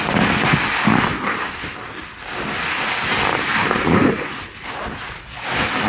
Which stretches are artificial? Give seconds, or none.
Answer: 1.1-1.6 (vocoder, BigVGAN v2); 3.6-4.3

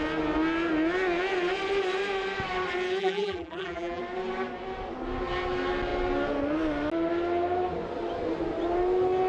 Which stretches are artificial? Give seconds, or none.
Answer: 3.0-4.0 (vocoder, BigVGAN v2)

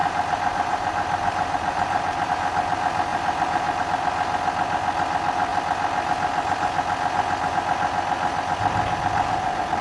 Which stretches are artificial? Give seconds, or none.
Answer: 0.0-2.3 (vocoder, BigVGAN v2); 3.1-3.8

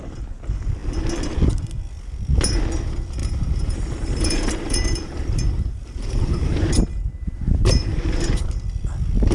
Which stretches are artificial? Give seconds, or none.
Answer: 3.2-8.2 (vocoder, BigVGAN v2)

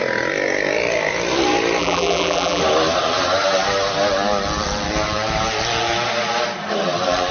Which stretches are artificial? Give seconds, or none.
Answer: 1.8-2.6 (vocoder, BigVGAN v2)

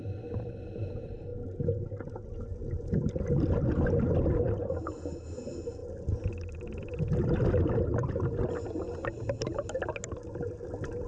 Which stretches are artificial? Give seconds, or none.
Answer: none